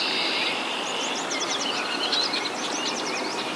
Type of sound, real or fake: real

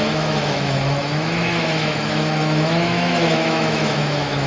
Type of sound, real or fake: fake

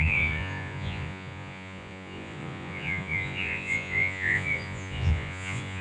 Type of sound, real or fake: fake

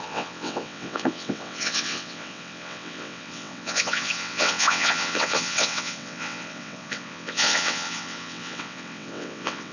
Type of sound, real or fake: fake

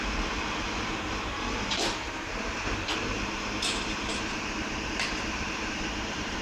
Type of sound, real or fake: fake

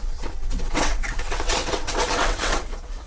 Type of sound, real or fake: fake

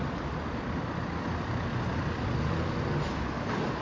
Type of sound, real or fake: real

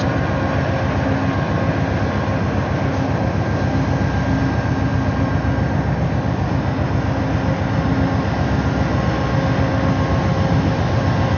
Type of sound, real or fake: real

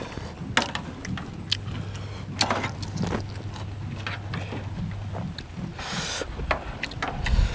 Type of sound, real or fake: real